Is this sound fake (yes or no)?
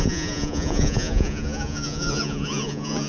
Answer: yes